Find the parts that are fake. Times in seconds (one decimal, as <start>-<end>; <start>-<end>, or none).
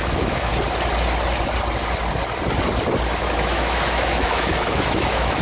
0.0-0.5; 3.2-5.4